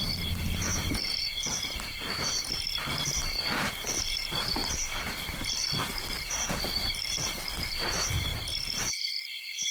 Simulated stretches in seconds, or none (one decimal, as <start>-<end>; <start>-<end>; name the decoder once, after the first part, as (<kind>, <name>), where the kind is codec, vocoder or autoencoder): 0.0-4.6 (vocoder, BigVGAN v2); 5.2-9.7